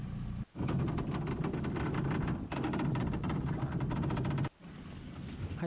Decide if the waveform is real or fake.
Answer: real